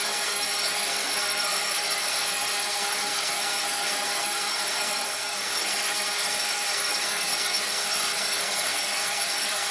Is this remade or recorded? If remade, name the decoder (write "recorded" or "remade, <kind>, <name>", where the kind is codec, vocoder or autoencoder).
remade, codec, SNAC